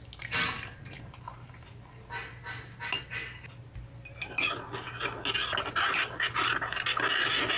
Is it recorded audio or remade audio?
recorded